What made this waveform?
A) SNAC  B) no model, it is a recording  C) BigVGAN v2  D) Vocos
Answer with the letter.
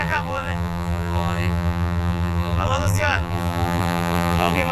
C